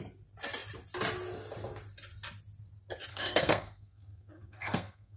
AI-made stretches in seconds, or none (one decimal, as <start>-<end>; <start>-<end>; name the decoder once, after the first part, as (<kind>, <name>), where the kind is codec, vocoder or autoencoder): 3.1-5.2 (codec, SNAC)